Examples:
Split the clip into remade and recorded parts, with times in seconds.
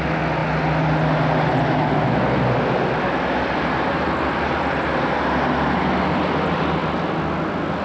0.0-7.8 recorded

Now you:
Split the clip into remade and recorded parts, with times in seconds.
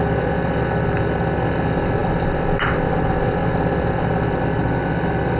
0.0-5.4 recorded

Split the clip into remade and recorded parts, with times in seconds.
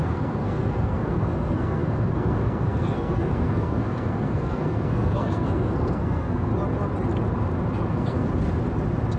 0.0-6.5 remade; 6.5-7.9 recorded; 7.9-8.3 remade; 8.3-9.2 recorded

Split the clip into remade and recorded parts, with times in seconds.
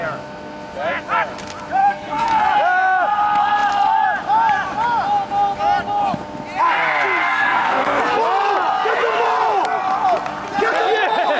0.0-1.8 recorded; 1.8-2.4 remade; 2.4-7.2 recorded; 7.2-8.0 remade; 8.0-11.4 recorded